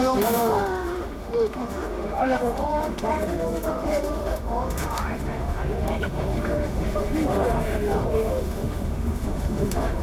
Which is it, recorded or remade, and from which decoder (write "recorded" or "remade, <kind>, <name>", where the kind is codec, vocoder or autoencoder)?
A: remade, autoencoder, DAC-VAE